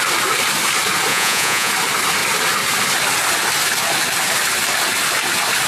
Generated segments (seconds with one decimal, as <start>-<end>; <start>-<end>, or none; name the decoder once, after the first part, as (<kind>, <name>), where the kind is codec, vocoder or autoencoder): 1.1-1.7 (vocoder, Vocos)